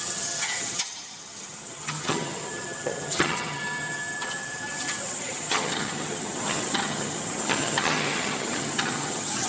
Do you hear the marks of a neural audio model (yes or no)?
yes